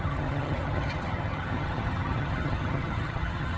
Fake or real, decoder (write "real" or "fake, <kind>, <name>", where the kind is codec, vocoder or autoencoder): fake, vocoder, HiFi-GAN